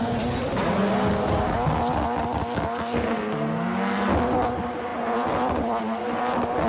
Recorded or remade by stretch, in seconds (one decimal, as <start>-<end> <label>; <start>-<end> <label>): 0.0-6.7 recorded